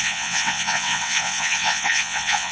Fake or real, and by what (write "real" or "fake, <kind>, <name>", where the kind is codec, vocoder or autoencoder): fake, vocoder, WaveNeXt